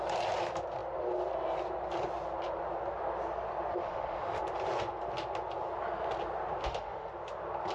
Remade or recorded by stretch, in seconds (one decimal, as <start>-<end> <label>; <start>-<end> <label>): 0.0-3.7 recorded; 3.7-4.4 remade; 4.4-6.6 recorded; 6.6-7.1 remade; 7.1-7.7 recorded